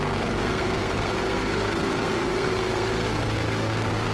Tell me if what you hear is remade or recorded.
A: remade